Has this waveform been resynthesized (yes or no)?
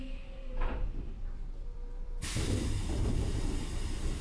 yes